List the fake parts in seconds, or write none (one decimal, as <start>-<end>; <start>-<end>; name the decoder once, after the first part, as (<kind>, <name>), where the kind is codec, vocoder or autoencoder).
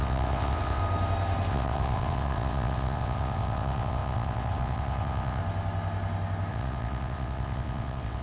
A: 0.0-0.8 (vocoder, WaveNeXt); 1.5-5.4; 6.5-8.2